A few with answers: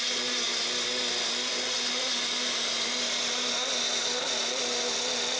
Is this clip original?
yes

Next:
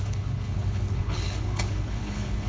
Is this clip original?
no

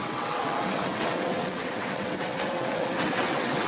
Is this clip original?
no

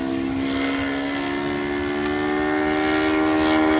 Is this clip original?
yes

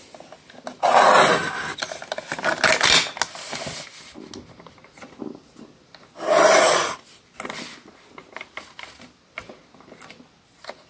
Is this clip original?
yes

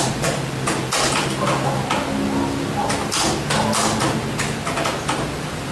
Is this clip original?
yes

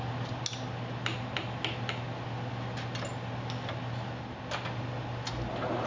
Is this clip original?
yes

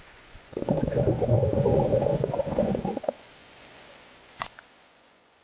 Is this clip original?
no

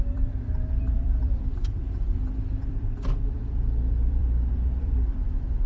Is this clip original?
no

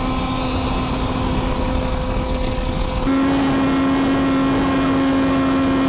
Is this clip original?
yes